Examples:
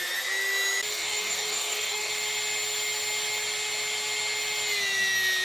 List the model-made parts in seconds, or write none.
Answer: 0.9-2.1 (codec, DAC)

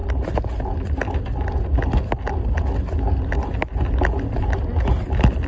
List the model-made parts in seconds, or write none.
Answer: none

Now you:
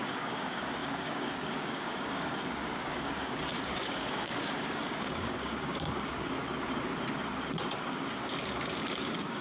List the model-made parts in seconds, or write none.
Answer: 0.0-6.4 (codec, DAC); 7.8-9.4